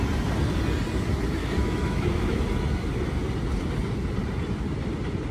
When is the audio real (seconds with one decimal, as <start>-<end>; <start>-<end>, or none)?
0.0-1.4; 2.4-5.3